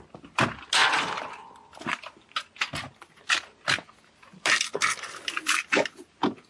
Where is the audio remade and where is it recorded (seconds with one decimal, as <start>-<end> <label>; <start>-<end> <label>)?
0.0-6.5 recorded

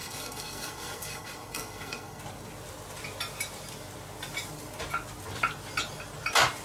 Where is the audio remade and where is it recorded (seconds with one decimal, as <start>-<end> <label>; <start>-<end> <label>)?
0.0-2.2 remade; 2.2-6.6 recorded